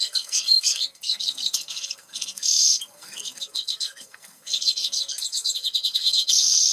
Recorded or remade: remade